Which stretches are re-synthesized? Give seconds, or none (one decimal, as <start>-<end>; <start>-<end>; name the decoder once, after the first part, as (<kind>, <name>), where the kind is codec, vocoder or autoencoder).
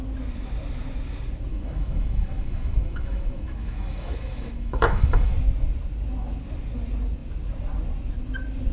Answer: 1.5-5.3 (autoencoder, DAC-VAE)